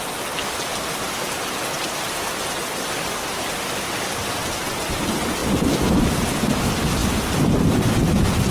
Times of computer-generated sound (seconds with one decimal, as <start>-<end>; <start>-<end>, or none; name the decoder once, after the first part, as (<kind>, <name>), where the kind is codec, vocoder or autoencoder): 0.7-5.0 (vocoder, BigVGAN v2); 5.4-6.1; 7.0-8.0